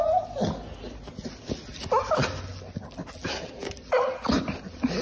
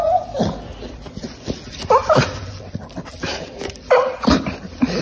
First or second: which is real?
first